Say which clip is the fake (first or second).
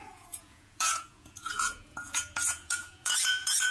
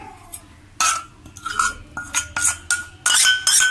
first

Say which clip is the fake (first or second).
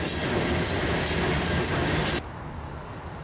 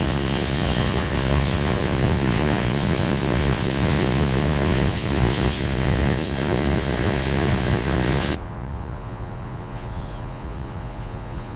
second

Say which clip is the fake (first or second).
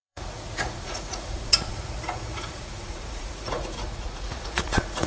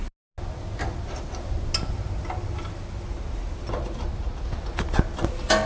first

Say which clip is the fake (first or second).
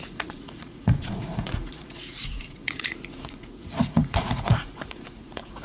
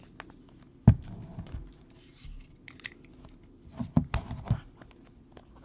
first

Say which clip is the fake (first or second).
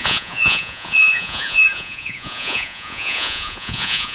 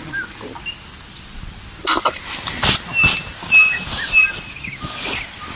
first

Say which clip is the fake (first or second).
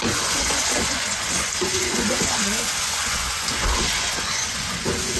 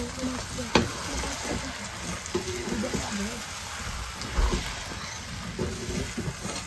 first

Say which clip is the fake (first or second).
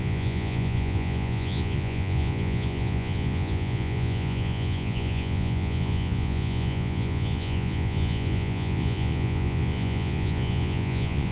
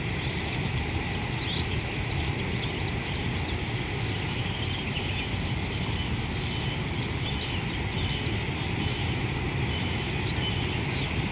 first